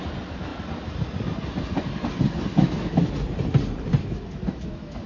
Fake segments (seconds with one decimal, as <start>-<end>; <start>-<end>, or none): 2.5-3.1; 4.0-5.1